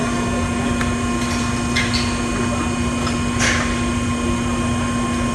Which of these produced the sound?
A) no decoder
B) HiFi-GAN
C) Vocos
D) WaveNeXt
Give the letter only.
A